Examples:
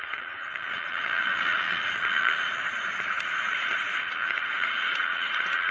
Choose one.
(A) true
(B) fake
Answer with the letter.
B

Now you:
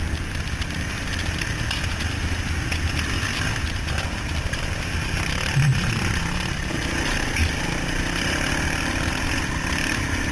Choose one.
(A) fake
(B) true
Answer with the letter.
B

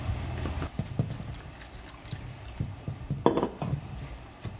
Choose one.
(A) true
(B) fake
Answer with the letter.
A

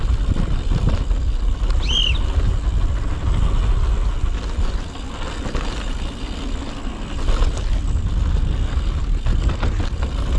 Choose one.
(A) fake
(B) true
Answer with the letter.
B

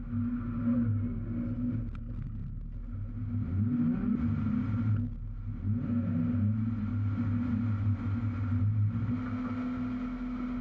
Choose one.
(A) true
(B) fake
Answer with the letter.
A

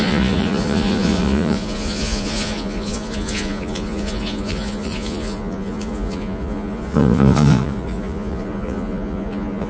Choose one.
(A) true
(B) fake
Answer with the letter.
B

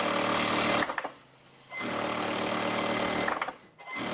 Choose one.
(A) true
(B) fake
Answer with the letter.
A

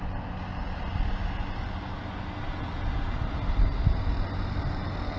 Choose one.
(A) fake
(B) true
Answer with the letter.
B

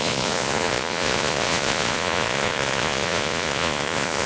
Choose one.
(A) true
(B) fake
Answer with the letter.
B